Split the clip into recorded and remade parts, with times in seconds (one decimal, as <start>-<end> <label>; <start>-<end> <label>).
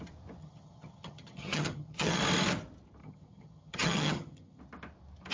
0.0-0.4 recorded; 0.4-2.2 remade; 2.2-3.0 recorded; 3.0-4.6 remade; 4.6-5.3 recorded